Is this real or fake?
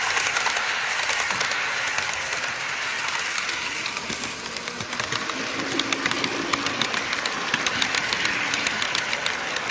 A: real